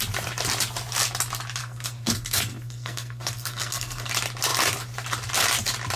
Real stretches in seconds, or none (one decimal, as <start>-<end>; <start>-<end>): 0.0-1.6; 4.1-6.0

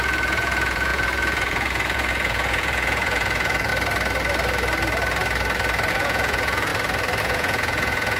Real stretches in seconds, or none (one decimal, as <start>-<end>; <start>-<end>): 3.7-5.9; 6.7-7.2